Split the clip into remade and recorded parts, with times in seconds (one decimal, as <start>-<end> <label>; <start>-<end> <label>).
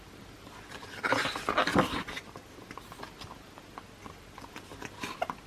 0.0-5.5 recorded